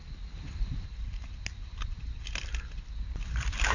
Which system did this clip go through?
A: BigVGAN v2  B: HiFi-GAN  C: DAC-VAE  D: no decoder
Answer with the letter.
D